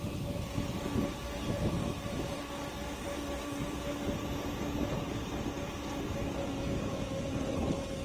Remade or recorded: recorded